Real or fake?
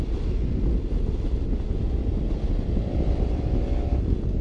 real